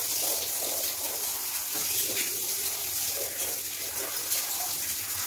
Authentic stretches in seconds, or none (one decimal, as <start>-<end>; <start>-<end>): 0.0-5.3